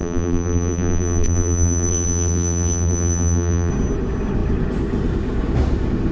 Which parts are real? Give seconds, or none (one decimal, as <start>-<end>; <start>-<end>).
3.7-6.1